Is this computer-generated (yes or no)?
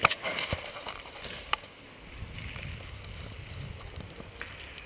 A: no